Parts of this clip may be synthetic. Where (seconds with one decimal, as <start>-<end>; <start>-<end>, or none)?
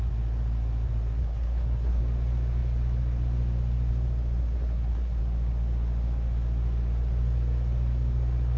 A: 1.2-2.0; 4.4-5.2